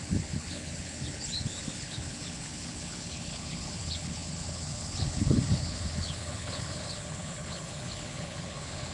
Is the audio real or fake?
fake